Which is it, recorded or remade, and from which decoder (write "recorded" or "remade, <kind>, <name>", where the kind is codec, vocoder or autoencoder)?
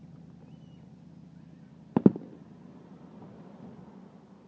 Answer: recorded